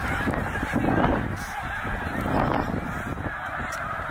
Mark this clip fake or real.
real